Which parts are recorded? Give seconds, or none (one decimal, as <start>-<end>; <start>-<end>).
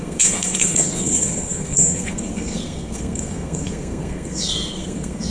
none